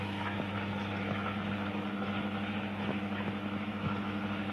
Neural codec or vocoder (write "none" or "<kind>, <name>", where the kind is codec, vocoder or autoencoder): autoencoder, DAC-VAE